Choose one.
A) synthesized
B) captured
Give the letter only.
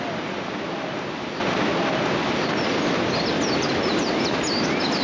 B